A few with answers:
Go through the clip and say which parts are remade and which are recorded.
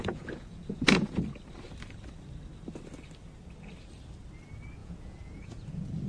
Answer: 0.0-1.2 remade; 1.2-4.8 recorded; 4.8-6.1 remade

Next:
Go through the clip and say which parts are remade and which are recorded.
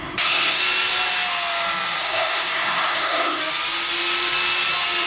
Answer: 0.0-0.6 remade; 0.6-2.0 recorded; 2.0-3.4 remade; 3.4-5.1 recorded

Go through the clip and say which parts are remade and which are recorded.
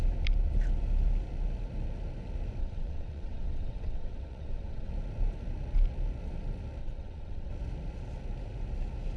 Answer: 0.0-2.6 recorded; 2.6-4.9 remade; 4.9-6.8 recorded; 6.8-7.5 remade; 7.5-9.2 recorded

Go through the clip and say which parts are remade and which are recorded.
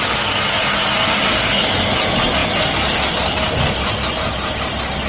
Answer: 0.0-5.1 recorded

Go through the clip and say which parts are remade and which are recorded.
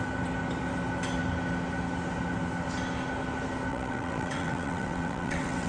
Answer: 0.0-3.7 recorded; 3.7-5.7 remade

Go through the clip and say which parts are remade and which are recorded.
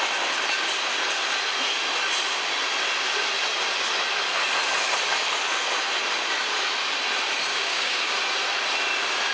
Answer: 0.0-7.5 recorded; 7.5-8.1 remade; 8.1-9.3 recorded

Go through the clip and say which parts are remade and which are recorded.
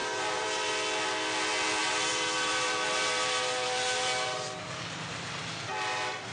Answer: 0.0-0.7 remade; 0.7-1.8 recorded; 1.8-5.5 remade; 5.5-6.3 recorded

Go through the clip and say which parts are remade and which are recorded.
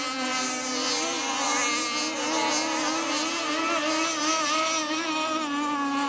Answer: 0.0-6.1 recorded